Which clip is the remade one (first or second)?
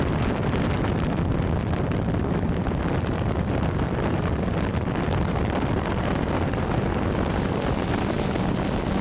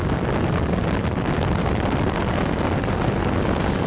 first